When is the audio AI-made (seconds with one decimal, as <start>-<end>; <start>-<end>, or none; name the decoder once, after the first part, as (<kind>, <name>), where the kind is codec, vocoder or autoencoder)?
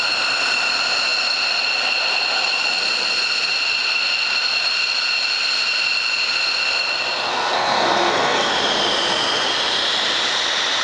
7.3-8.5 (codec, SNAC)